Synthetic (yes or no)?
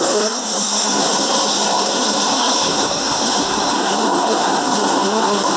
yes